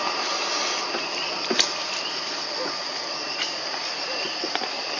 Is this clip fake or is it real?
real